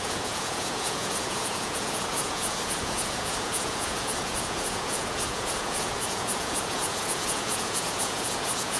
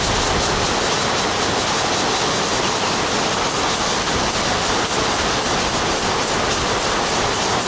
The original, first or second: second